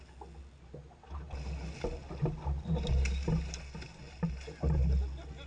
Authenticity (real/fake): real